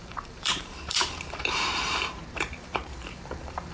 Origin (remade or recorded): remade